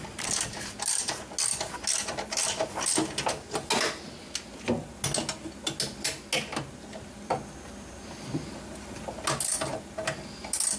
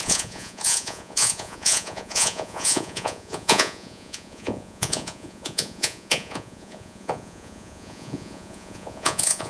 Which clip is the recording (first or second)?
first